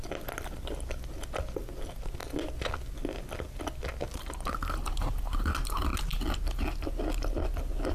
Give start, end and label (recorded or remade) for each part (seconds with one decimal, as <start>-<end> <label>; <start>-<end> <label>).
0.0-7.9 recorded